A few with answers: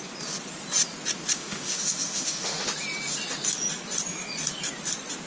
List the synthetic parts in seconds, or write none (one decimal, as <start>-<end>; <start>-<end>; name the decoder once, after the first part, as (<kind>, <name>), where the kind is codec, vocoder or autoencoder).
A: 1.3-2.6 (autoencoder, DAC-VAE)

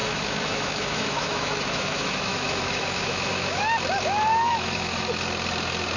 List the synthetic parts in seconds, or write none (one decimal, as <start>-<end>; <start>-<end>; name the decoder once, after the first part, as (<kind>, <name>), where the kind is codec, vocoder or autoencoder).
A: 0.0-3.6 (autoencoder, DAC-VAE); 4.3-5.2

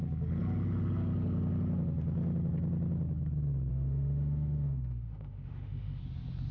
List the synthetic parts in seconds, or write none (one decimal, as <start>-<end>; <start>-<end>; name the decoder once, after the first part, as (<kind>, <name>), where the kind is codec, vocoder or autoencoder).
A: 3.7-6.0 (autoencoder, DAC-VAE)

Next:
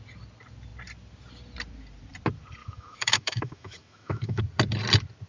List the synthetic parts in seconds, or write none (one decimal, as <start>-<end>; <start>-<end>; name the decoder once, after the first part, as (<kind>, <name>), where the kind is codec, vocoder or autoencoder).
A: 2.6-4.4 (autoencoder, DAC-VAE)

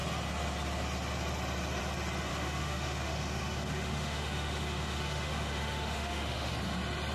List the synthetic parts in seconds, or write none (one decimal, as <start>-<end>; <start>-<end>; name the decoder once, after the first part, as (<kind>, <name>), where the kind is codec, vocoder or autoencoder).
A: 2.3-6.5 (autoencoder, DAC-VAE)

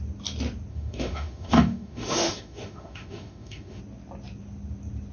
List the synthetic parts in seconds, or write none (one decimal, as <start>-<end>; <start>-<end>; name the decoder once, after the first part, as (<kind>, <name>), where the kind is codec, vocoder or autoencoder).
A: 0.7-3.8 (autoencoder, DAC-VAE)

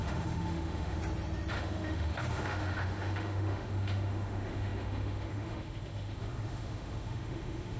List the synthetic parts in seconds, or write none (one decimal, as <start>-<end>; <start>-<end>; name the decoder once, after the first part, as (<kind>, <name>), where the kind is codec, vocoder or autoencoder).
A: 0.0-1.0 (autoencoder, DAC-VAE); 1.5-7.8